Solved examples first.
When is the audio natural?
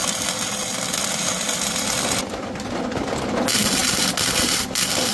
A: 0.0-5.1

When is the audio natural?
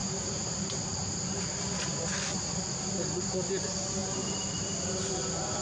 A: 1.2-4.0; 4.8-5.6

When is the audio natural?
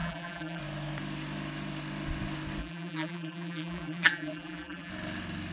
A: 0.6-2.6; 4.9-5.5